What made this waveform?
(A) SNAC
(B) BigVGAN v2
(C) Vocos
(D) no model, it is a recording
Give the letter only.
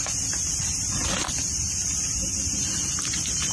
D